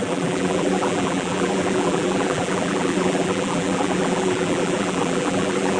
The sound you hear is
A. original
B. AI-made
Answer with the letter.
B